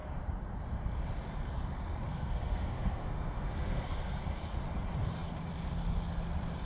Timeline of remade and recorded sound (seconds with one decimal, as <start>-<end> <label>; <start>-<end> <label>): 0.0-2.1 recorded; 2.1-4.2 remade; 4.2-6.7 recorded